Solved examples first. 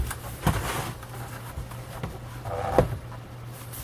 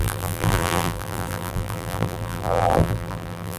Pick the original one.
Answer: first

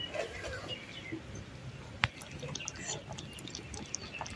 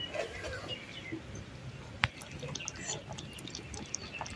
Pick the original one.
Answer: second